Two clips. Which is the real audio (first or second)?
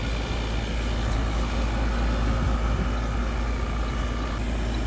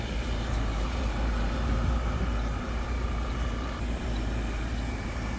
first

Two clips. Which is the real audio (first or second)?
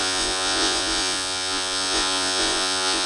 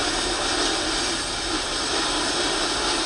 second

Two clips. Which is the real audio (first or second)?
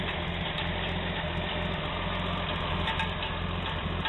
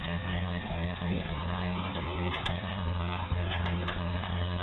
first